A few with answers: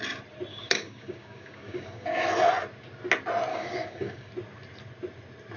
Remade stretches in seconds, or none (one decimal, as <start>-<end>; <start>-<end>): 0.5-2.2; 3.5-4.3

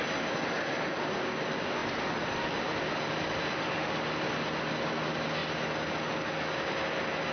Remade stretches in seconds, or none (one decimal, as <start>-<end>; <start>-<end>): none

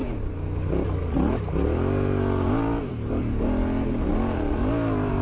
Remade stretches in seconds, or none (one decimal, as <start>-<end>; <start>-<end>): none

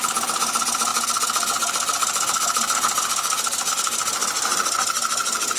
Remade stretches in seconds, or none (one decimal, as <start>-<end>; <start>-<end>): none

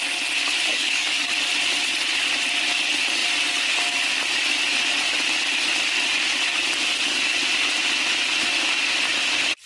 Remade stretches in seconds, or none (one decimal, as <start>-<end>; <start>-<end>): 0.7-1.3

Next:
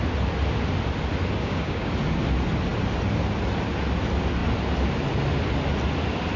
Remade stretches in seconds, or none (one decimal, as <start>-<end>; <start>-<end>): 1.4-1.9

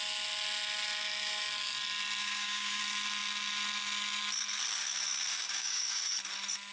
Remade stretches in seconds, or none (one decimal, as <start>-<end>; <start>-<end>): 2.2-2.8; 5.3-6.1